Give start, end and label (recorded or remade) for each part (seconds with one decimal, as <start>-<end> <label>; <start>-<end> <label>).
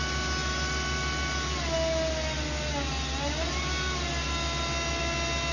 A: 0.0-5.5 recorded